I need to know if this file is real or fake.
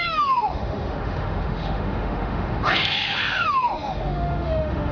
fake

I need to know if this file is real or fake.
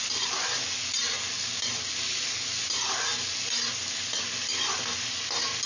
real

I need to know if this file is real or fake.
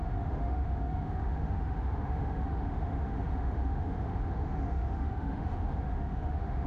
fake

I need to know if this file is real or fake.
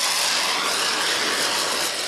real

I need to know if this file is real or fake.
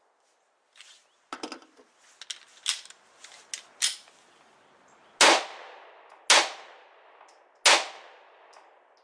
real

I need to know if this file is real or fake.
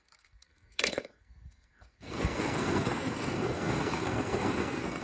fake